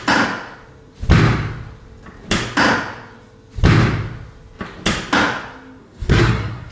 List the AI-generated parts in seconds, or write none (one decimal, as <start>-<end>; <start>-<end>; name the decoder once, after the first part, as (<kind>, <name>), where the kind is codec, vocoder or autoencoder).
5.8-6.7 (codec, SNAC)